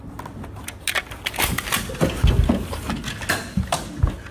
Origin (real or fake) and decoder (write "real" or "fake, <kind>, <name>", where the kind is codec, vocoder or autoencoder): real